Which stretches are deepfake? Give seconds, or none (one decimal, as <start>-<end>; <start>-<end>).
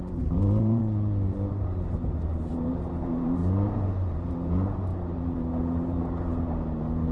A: 0.0-0.8; 1.5-3.4; 4.1-7.1